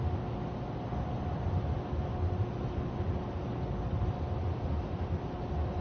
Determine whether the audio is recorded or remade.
recorded